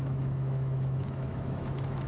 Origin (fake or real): fake